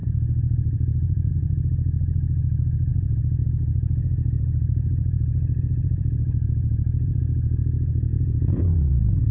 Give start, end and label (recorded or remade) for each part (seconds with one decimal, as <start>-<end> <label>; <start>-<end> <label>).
0.0-1.3 remade; 1.3-2.9 recorded; 2.9-7.2 remade; 7.2-8.1 recorded; 8.1-9.3 remade